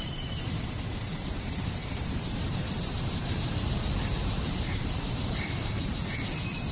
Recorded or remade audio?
remade